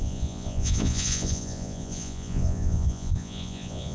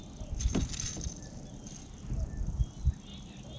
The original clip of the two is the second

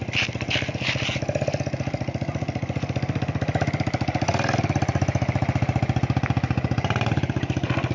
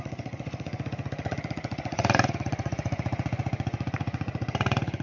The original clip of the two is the first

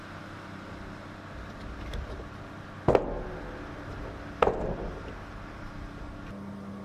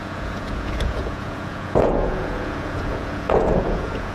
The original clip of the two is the first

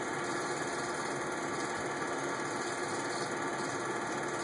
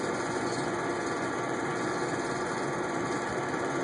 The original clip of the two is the first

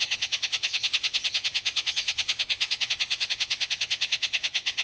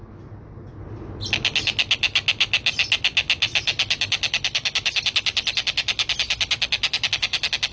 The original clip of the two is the second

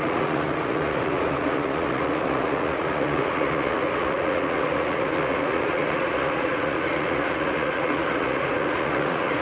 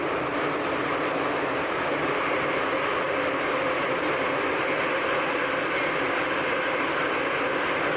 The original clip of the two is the second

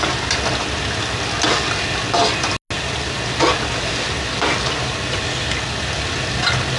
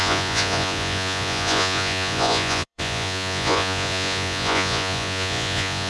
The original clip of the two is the first